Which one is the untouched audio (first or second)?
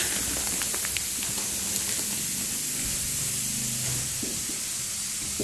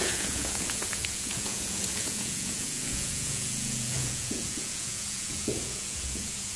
first